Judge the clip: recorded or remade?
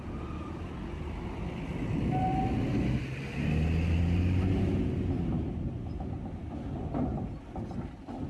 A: recorded